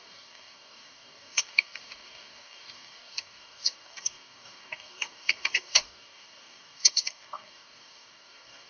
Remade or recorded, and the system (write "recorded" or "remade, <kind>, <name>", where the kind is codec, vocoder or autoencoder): remade, codec, DAC